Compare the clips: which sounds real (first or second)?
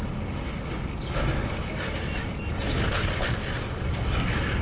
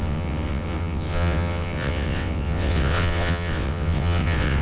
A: first